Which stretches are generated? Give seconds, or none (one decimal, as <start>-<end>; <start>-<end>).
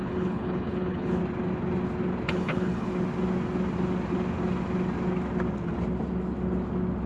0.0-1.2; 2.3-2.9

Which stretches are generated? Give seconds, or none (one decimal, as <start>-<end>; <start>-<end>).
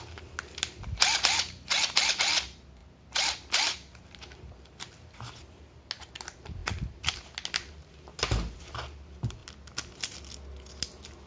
none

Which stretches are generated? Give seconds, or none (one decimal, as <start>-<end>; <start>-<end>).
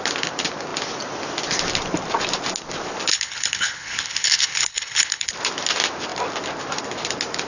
3.1-5.3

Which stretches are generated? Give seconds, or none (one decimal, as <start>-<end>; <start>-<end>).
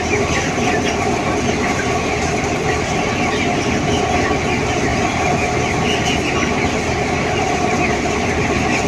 none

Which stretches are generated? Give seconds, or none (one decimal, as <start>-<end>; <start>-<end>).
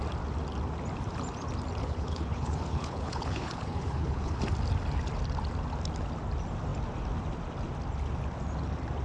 1.8-4.4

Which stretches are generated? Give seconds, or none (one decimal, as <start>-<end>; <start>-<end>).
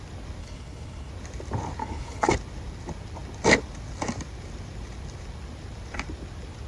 0.4-1.1; 1.8-2.3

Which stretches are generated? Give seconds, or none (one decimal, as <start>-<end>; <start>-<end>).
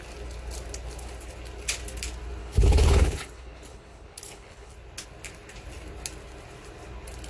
2.4-4.7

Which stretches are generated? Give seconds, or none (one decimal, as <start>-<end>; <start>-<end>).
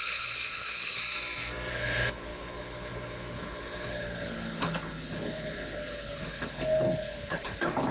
0.0-1.0; 1.7-7.9